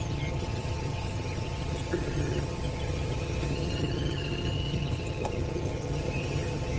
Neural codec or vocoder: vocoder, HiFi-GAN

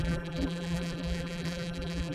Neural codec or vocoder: vocoder, BigVGAN v2